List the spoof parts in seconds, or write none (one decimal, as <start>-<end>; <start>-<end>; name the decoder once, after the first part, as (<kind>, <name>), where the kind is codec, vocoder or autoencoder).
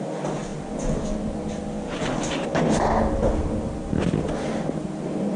none